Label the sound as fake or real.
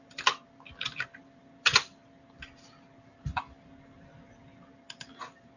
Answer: real